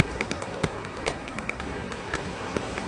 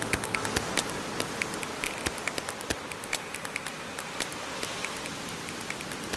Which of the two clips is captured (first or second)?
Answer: second